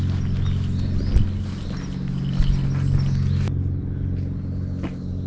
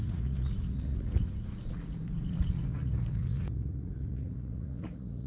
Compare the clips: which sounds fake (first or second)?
second